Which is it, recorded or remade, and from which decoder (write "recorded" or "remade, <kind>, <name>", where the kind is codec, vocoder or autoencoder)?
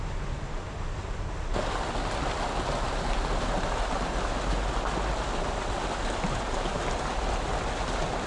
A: recorded